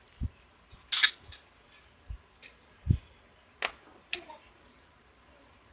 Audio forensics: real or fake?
real